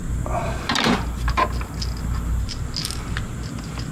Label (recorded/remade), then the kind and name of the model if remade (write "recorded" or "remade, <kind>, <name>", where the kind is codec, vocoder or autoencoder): recorded